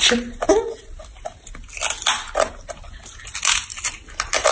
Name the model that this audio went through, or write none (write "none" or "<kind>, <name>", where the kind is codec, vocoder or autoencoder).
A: none